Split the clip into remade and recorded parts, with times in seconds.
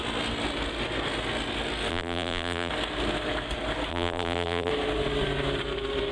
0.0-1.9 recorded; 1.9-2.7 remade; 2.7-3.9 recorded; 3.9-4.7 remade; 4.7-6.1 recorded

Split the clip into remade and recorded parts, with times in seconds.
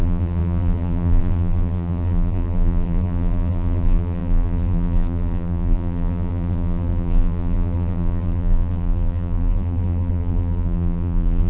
0.0-11.5 remade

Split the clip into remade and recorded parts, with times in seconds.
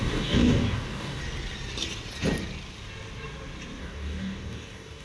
0.0-1.2 remade; 1.2-3.8 recorded; 3.8-5.0 remade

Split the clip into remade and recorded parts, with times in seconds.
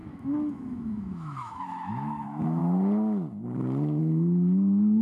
0.0-2.6 remade; 2.6-4.0 recorded; 4.0-5.0 remade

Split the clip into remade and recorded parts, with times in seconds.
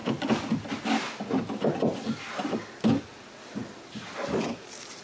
0.0-5.0 recorded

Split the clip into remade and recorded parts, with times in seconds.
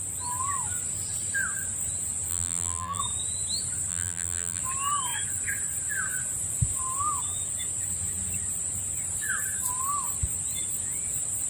0.0-2.3 recorded; 2.3-3.0 remade; 3.0-3.9 recorded; 3.9-4.6 remade; 4.6-11.5 recorded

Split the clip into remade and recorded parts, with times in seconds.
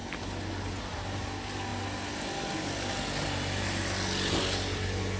0.0-5.2 recorded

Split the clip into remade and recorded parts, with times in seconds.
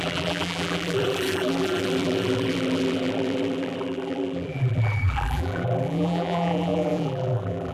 0.0-7.7 remade